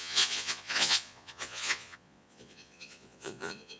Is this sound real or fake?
fake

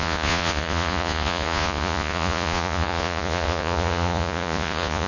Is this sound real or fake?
fake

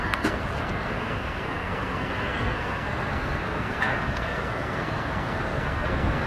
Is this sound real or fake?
fake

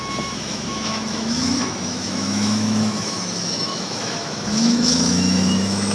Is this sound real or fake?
fake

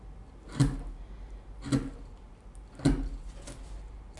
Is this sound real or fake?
real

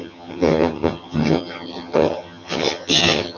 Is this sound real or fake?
fake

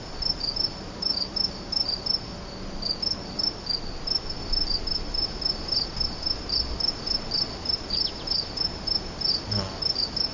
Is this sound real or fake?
real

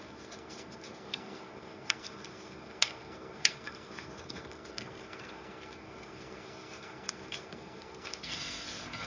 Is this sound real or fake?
fake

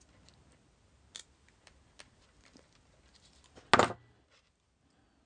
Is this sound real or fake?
real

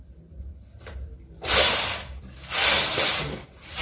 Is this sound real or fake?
real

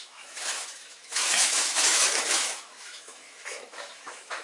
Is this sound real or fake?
fake